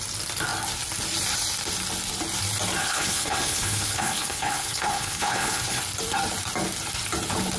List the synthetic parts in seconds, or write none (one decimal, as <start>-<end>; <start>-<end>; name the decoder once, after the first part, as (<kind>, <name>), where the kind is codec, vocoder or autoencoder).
2.8-5.8 (codec, HILCodec)